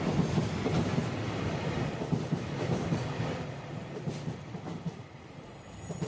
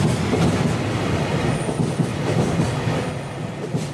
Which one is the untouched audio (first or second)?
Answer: second